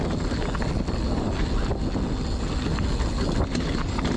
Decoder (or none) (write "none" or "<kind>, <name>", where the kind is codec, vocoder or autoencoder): none